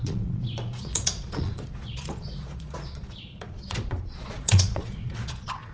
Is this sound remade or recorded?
remade